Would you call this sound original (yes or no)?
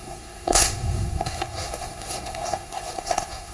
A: no